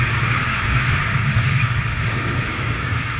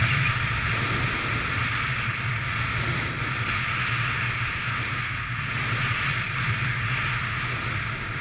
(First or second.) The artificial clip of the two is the first